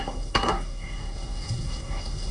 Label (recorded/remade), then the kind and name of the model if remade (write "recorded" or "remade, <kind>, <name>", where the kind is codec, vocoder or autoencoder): remade, codec, SNAC